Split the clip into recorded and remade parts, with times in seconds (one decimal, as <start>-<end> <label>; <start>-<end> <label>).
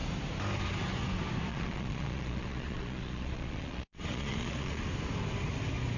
0.0-1.5 recorded; 1.5-4.8 remade; 4.8-6.0 recorded